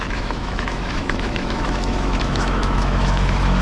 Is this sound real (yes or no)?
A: no